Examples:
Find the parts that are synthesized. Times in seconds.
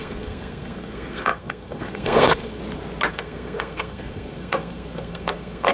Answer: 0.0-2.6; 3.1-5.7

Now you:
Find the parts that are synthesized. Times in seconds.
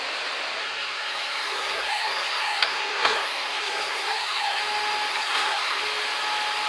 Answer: 0.6-4.6; 5.1-5.8